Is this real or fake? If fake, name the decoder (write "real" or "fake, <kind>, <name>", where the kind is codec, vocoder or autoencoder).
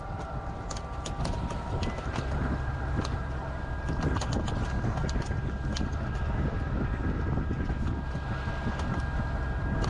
real